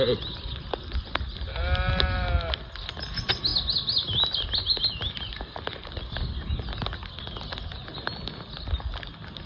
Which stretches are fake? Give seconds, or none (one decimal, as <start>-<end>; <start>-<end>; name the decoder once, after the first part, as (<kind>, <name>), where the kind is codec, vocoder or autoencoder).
none

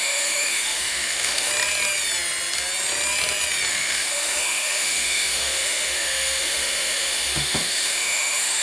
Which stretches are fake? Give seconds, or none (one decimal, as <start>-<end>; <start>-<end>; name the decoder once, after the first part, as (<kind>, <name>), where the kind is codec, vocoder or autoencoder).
0.0-1.5 (autoencoder, DAC-VAE); 3.7-8.6

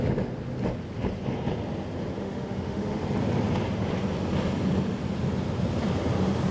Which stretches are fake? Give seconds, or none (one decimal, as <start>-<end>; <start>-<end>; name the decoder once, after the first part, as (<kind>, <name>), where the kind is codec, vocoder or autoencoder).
2.2-3.0 (autoencoder, DAC-VAE)